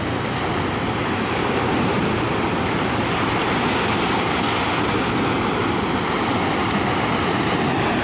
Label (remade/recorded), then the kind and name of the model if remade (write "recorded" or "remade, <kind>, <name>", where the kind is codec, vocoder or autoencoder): recorded